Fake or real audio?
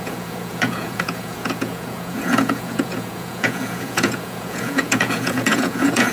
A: fake